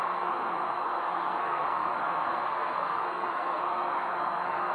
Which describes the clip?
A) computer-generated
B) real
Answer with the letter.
A